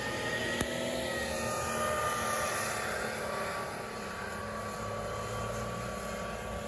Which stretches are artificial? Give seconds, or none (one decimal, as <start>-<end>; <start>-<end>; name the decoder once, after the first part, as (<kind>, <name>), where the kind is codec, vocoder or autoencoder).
none